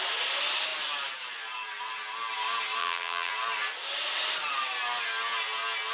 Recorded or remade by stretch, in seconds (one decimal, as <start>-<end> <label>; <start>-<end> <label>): 0.0-2.8 recorded; 2.8-3.3 remade; 3.3-5.9 recorded